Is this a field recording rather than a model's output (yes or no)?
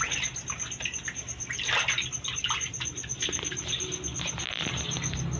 yes